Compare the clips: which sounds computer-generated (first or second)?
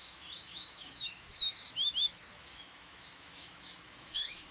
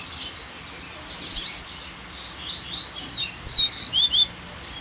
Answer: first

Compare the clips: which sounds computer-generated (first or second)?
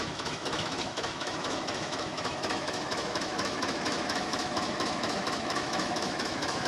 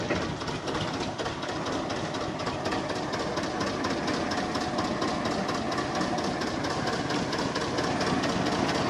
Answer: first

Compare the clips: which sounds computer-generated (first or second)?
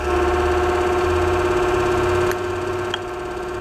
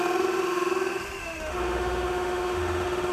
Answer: second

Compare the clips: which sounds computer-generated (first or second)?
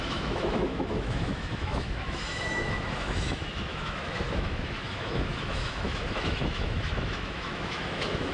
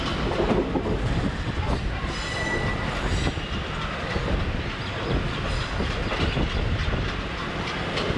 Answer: first